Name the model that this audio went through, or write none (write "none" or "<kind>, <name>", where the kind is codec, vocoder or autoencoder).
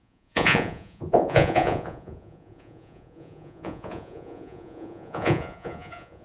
vocoder, Vocos